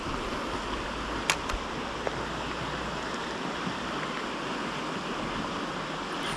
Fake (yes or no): no